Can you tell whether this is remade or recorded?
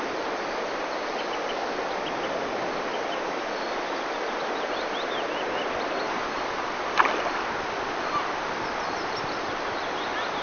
recorded